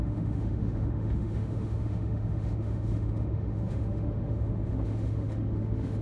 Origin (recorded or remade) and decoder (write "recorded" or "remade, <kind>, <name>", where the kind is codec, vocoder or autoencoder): remade, autoencoder, DAC-VAE